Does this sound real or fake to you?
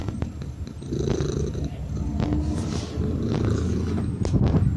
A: real